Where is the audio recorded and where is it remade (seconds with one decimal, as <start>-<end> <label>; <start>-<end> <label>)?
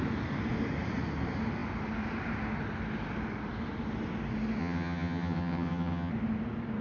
0.0-4.6 recorded; 4.6-6.1 remade; 6.1-6.8 recorded